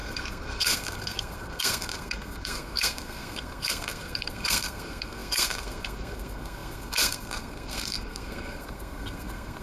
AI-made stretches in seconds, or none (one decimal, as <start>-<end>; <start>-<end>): 0.0-9.6